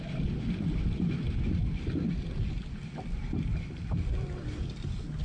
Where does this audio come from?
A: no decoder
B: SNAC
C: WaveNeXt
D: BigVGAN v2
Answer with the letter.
A